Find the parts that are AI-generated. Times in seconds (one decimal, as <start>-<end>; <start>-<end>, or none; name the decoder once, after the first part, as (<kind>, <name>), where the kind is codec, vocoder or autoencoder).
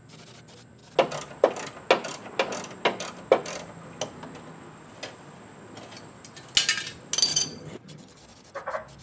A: 7.3-8.2 (vocoder, HiFi-GAN)